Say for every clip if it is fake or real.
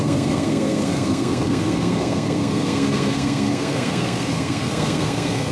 fake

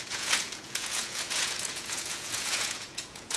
fake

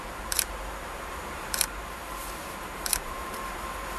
fake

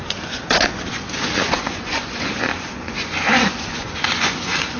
fake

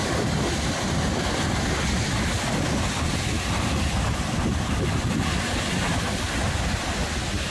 real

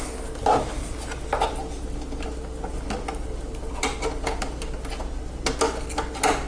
real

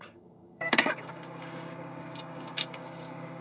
fake